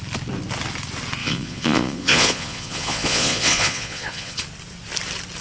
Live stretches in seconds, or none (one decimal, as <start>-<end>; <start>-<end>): 0.0-1.2; 4.4-5.4